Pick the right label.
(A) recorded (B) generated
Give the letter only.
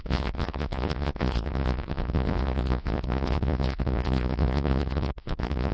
B